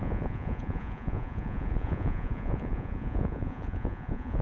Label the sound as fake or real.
fake